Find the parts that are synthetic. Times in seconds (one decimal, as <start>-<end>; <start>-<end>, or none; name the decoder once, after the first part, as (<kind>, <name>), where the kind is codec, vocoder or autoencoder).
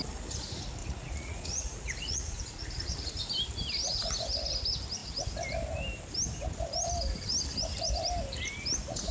0.8-3.2 (vocoder, Vocos)